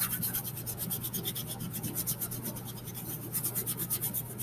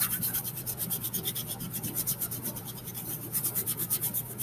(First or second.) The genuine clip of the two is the first